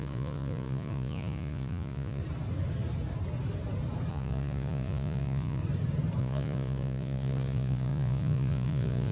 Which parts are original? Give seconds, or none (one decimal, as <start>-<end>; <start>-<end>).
2.2-4.1; 5.6-6.2